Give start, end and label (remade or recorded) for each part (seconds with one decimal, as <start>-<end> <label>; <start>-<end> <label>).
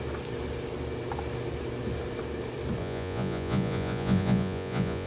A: 0.0-2.8 recorded; 2.8-5.1 remade